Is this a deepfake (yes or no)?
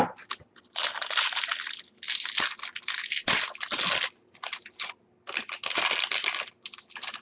no